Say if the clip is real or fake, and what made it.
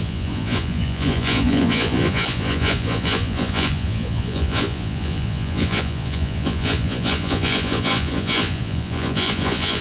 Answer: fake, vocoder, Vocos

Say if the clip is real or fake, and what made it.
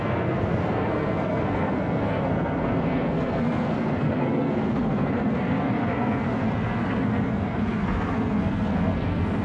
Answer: fake, codec, SNAC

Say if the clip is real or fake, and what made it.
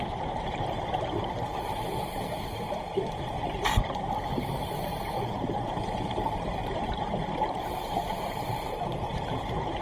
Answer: fake, vocoder, BigVGAN v2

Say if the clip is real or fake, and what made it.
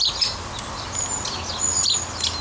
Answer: real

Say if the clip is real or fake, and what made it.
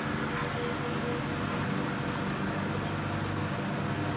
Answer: real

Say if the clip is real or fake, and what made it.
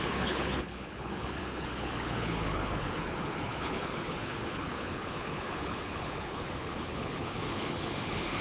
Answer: fake, codec, HILCodec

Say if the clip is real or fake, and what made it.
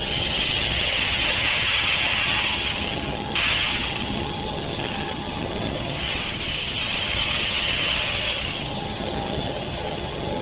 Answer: fake, vocoder, HiFi-GAN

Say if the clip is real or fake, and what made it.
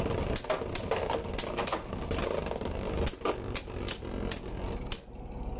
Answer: real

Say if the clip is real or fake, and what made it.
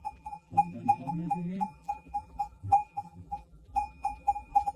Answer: fake, vocoder, BigVGAN v2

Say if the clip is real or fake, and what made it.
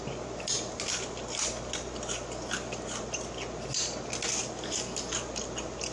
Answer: real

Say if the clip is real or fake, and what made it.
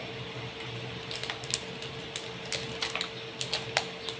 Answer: real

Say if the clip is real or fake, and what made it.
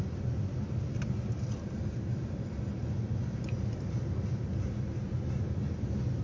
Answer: real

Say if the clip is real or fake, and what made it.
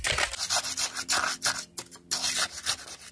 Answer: real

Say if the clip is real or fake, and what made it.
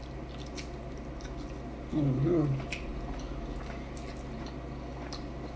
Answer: real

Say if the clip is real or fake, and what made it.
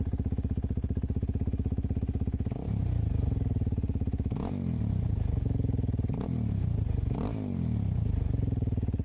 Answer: real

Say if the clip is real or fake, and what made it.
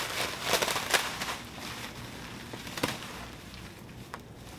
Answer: real